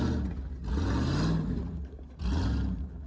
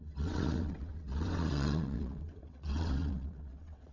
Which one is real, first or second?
first